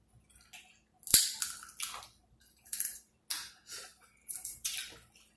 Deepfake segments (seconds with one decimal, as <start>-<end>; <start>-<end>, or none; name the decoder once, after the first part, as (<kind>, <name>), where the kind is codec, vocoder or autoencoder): 2.2-3.1 (vocoder, BigVGAN v2); 3.9-4.7